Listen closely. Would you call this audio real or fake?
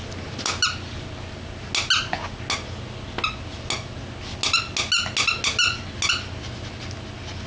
real